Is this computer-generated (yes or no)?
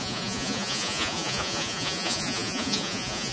yes